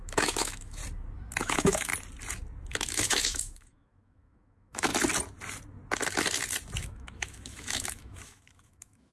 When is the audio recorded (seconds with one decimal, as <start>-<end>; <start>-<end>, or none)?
0.8-1.4; 1.9-2.7; 4.9-6.8